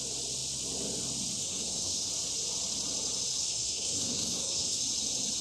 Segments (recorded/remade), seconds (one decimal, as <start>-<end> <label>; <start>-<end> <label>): 0.0-1.4 recorded; 1.4-2.1 remade; 2.1-3.4 recorded; 3.4-4.8 remade; 4.8-5.4 recorded

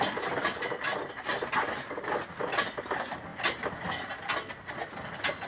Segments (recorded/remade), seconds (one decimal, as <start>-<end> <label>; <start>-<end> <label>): 0.0-5.5 recorded

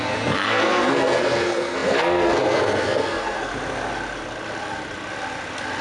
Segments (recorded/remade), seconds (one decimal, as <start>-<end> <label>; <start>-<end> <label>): 0.0-3.5 remade; 3.5-5.8 recorded

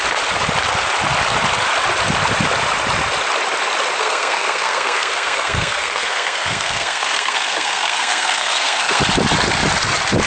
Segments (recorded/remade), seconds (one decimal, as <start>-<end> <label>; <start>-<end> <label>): 0.0-4.0 recorded; 4.0-9.0 remade; 9.0-10.3 recorded

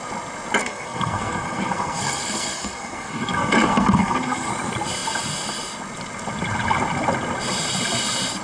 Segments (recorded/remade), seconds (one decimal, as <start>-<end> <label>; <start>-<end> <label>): 0.0-0.6 recorded; 0.6-4.5 remade; 4.5-8.4 recorded

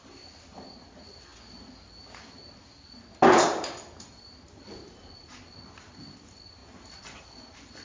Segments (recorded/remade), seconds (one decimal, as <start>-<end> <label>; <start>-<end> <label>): 0.0-7.8 recorded